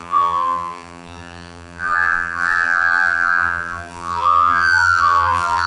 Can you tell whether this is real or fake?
fake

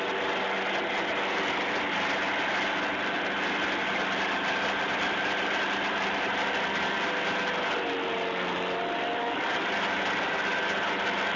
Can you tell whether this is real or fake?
real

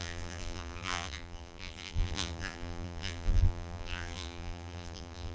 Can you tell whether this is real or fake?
fake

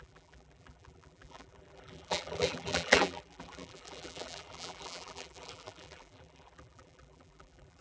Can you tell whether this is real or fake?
fake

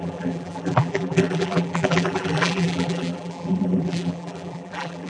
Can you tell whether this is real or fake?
fake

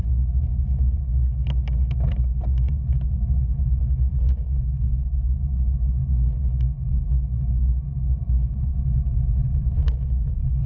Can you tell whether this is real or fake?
real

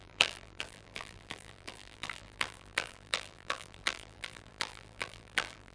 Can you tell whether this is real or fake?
fake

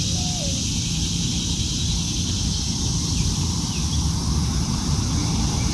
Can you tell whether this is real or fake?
fake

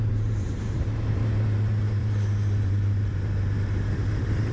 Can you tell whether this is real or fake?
fake